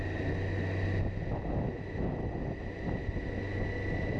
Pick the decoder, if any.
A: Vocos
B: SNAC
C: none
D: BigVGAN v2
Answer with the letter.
C